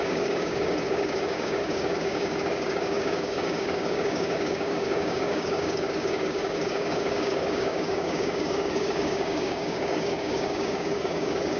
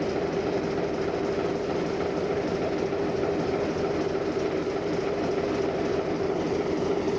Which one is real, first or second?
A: second